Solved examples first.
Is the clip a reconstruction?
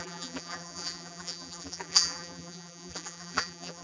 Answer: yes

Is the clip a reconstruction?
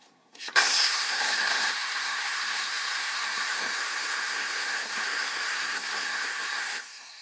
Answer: yes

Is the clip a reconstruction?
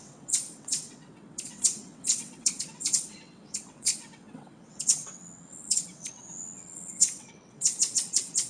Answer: yes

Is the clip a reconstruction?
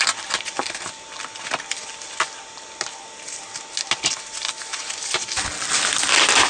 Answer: no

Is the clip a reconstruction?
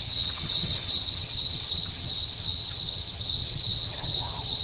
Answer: yes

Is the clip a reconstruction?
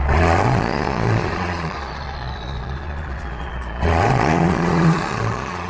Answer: yes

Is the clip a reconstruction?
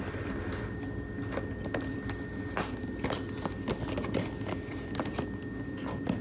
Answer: no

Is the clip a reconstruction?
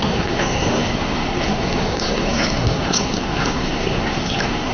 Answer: yes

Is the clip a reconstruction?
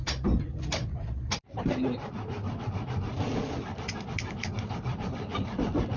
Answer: no